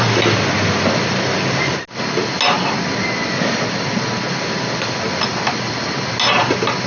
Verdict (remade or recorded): recorded